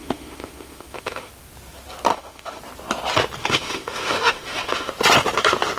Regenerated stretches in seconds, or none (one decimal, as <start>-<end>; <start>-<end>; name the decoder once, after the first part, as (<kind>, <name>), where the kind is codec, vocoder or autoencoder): 0.0-1.3 (autoencoder, DAC-VAE); 2.1-2.6; 3.4-4.9